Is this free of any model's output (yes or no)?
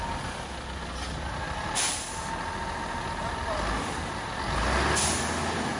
yes